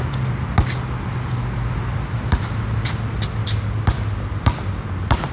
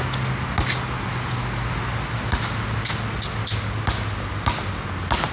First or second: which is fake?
first